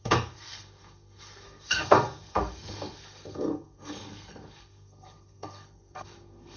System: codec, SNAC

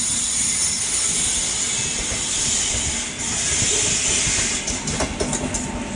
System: none